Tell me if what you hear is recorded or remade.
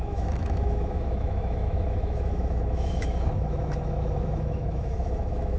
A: remade